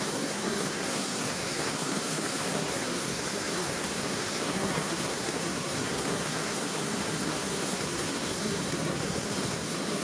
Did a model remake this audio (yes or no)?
yes